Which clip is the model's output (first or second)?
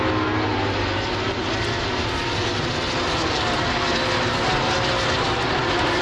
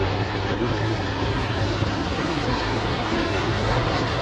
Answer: second